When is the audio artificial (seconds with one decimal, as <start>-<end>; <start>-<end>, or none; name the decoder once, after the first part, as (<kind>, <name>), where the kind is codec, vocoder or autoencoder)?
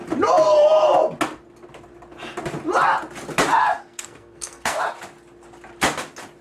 3.6-4.8 (codec, SNAC)